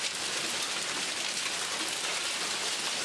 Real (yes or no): yes